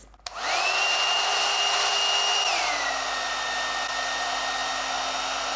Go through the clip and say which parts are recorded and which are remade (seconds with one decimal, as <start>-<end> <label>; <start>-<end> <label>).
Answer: 0.0-5.6 recorded

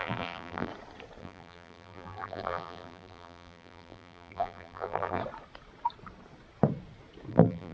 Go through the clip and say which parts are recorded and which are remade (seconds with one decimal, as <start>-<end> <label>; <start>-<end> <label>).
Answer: 0.0-0.7 remade; 0.7-1.2 recorded; 1.2-5.2 remade; 5.2-7.3 recorded; 7.3-7.7 remade

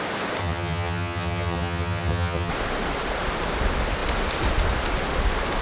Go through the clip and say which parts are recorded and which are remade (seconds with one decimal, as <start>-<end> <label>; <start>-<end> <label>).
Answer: 0.0-0.4 recorded; 0.4-2.5 remade; 2.5-5.6 recorded

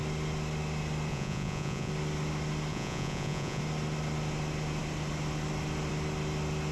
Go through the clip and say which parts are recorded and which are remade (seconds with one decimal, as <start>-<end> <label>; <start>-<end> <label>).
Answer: 0.0-1.1 recorded; 1.1-1.9 remade; 1.9-2.7 recorded; 2.7-3.6 remade; 3.6-6.7 recorded

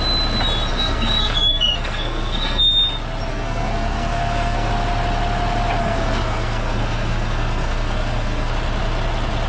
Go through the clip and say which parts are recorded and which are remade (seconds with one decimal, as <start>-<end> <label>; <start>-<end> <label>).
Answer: 0.0-0.7 recorded; 0.7-2.6 remade; 2.6-3.3 recorded; 3.3-4.7 remade; 4.7-5.8 recorded; 5.8-8.5 remade; 8.5-9.5 recorded

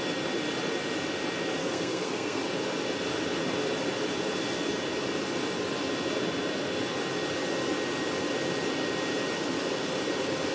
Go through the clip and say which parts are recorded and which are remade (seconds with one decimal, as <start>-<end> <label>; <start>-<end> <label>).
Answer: 0.0-1.6 recorded; 1.6-2.4 remade; 2.4-10.5 recorded